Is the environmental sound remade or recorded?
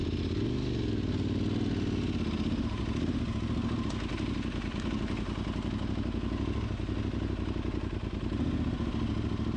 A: recorded